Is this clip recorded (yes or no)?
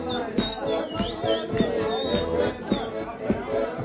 yes